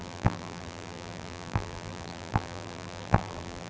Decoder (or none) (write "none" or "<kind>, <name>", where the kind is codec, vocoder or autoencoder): vocoder, BigVGAN v2